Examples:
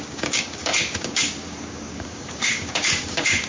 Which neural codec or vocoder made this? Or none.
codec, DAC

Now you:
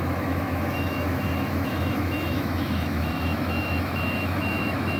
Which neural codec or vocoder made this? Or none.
autoencoder, DAC-VAE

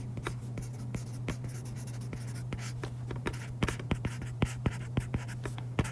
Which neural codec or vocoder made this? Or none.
none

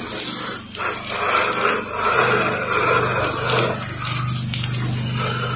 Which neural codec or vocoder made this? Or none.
none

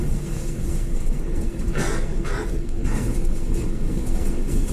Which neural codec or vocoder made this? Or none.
codec, SNAC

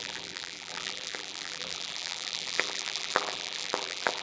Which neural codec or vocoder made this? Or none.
vocoder, BigVGAN v2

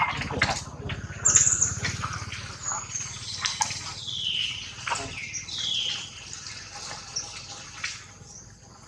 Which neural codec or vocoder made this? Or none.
none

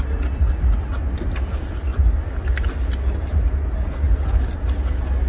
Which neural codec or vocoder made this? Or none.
none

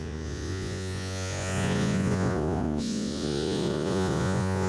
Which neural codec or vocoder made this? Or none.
vocoder, Vocos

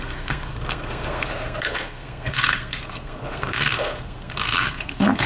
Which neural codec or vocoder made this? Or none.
codec, SNAC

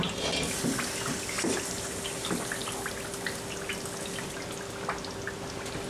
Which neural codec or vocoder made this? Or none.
none